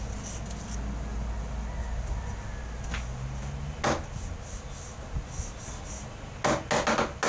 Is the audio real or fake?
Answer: real